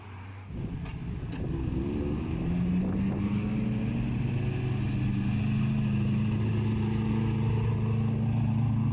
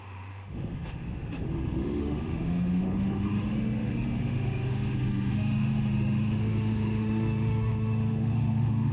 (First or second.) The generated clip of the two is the second